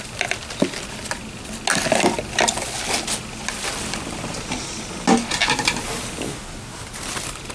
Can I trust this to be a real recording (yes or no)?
yes